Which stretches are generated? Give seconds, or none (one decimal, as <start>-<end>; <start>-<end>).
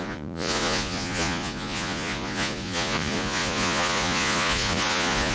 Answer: 0.0-5.3